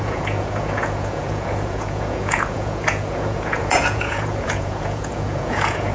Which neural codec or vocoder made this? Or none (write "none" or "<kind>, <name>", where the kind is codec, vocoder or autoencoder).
vocoder, Vocos